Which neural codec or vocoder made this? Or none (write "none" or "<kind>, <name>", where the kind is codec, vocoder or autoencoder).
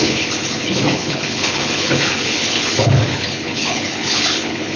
codec, HILCodec